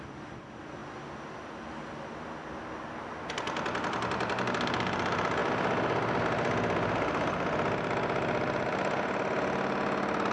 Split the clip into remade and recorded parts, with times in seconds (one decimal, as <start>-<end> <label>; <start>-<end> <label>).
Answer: 0.0-10.3 recorded